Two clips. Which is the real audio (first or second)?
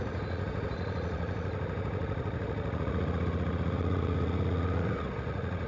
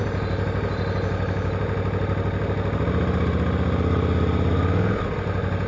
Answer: second